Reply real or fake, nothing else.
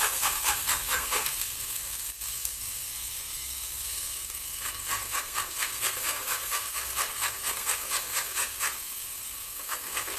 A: fake